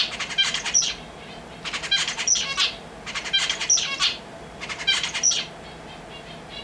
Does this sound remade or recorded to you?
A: recorded